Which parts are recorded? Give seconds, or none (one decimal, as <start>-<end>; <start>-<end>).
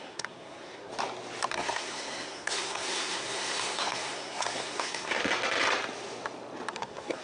0.9-1.5; 5.2-6.7